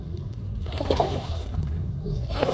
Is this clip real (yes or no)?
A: no